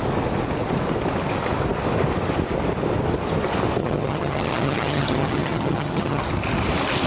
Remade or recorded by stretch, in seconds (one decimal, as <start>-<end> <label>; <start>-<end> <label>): 0.0-3.8 recorded; 3.8-6.2 remade; 6.2-7.1 recorded